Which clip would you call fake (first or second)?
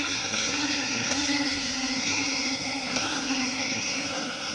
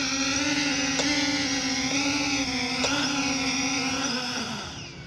first